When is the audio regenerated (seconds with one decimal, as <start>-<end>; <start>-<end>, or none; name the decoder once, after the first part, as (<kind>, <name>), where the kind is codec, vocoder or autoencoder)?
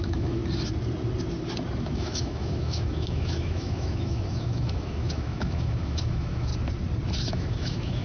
0.0-0.4 (autoencoder, DAC-VAE); 1.8-6.5; 7.3-8.0